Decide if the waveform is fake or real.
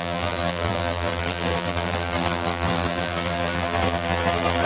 fake